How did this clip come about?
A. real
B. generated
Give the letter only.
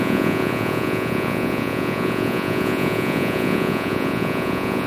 B